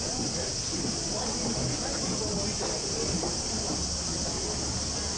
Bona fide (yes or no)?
yes